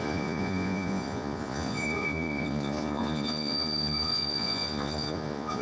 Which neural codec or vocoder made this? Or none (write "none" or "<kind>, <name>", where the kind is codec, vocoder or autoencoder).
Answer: vocoder, Vocos